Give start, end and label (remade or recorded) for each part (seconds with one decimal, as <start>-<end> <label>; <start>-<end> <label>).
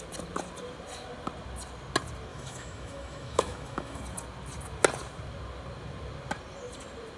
0.0-2.3 recorded; 2.3-4.0 remade; 4.0-7.2 recorded